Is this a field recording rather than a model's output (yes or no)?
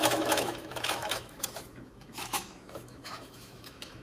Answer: no